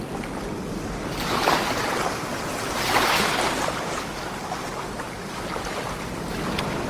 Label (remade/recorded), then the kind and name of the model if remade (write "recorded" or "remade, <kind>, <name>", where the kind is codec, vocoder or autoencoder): recorded